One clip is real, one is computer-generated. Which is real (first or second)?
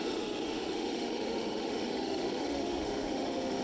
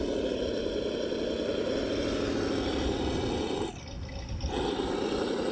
second